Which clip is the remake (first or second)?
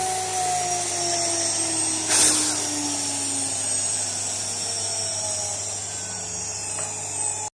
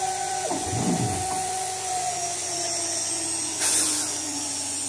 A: second